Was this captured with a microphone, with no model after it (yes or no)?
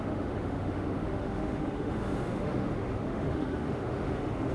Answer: no